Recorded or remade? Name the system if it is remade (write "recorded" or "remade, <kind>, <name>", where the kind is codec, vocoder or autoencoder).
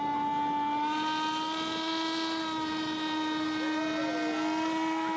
recorded